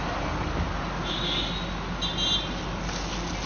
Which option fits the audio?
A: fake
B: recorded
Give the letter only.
B